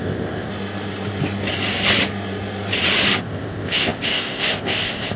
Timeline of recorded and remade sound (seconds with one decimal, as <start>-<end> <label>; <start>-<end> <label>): 0.0-0.5 remade; 0.5-3.1 recorded; 3.1-5.2 remade